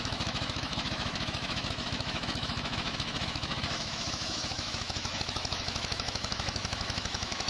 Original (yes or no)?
no